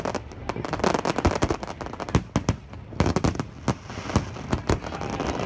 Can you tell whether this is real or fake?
real